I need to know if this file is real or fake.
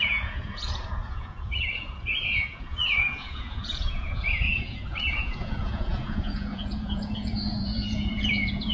fake